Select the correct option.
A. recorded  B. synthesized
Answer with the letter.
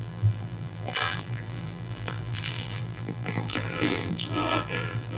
B